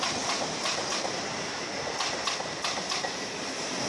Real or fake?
real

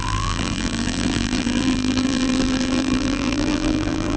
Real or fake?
fake